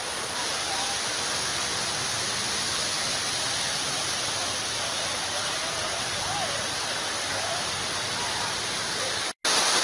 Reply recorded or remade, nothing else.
recorded